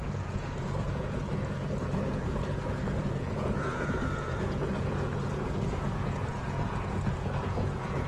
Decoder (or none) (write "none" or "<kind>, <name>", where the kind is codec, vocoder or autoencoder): vocoder, Vocos